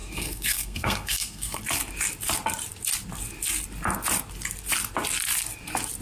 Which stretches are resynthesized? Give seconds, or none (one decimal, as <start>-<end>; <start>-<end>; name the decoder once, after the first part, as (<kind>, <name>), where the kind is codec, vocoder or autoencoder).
0.0-1.6 (codec, SNAC)